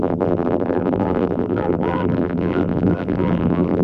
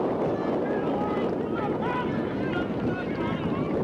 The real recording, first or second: second